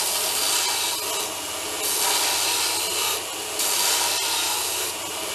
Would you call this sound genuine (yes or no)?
yes